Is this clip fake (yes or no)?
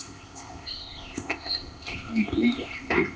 yes